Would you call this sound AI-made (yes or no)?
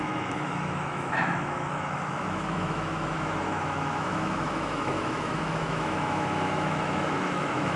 yes